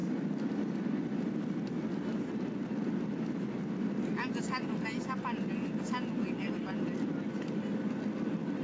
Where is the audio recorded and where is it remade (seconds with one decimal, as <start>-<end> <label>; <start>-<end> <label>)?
0.0-8.6 recorded